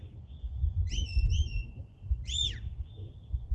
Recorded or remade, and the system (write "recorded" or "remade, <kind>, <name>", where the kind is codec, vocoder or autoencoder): remade, vocoder, Vocos